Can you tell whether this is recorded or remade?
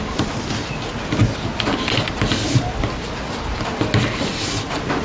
recorded